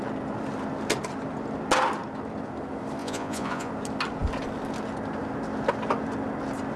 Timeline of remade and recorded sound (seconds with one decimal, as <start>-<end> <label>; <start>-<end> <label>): 0.0-3.0 recorded; 3.0-3.7 remade; 3.7-6.8 recorded